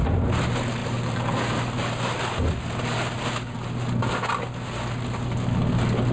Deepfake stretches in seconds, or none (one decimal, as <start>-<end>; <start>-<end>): none